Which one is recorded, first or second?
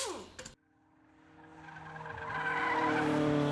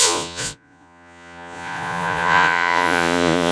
first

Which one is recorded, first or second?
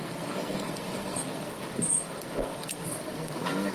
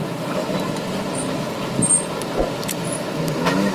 second